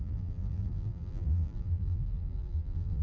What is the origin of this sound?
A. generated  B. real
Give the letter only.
A